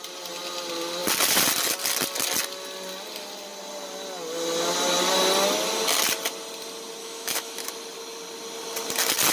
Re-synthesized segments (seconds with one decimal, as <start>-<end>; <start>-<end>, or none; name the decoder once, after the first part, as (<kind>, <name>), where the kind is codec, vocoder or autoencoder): 7.0-7.7 (autoencoder, DAC-VAE)

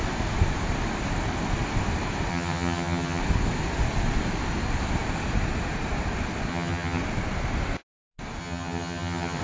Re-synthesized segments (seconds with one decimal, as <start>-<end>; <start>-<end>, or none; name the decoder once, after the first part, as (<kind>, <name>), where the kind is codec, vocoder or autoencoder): 2.3-3.2 (vocoder, HiFi-GAN); 6.5-7.0; 8.4-9.4